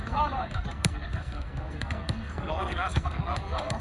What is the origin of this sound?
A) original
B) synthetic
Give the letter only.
B